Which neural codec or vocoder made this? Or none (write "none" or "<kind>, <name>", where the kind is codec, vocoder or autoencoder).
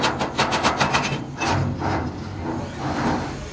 none